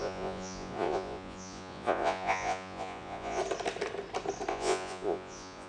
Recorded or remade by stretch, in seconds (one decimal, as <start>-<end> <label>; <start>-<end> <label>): 0.0-3.4 remade; 3.4-4.5 recorded; 4.5-5.7 remade